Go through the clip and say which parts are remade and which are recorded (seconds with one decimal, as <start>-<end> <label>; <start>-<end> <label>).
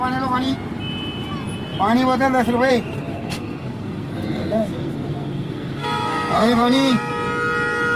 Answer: 0.0-3.1 recorded; 3.1-7.1 remade; 7.1-8.0 recorded